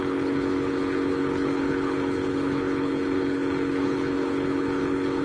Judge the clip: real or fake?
fake